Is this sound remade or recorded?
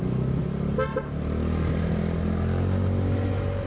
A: recorded